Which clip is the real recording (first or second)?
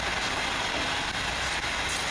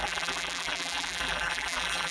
first